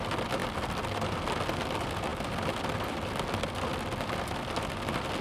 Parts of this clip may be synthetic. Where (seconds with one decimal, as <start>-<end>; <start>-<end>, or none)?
none